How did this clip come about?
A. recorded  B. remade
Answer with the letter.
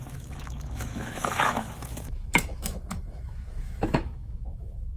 B